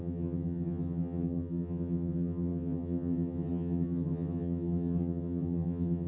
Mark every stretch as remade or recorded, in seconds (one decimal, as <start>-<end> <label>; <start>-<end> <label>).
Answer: 0.0-6.1 remade